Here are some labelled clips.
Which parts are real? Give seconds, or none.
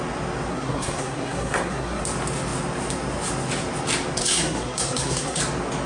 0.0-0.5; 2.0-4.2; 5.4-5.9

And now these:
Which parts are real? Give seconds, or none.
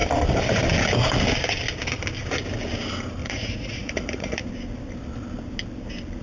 0.0-3.2; 4.5-6.2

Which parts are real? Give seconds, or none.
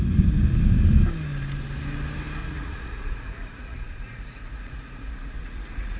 0.0-2.4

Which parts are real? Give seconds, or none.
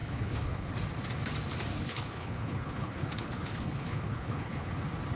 0.7-1.7; 4.7-5.2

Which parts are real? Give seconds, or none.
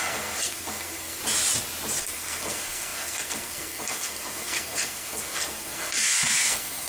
1.2-2.0